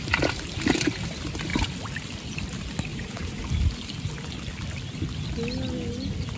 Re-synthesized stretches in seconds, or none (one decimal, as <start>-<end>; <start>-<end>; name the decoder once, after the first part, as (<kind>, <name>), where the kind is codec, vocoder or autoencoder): 2.9-3.4 (vocoder, BigVGAN v2)